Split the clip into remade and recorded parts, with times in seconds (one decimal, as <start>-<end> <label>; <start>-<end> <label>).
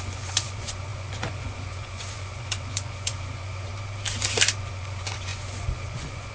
0.0-3.7 remade; 3.7-4.6 recorded; 4.6-6.3 remade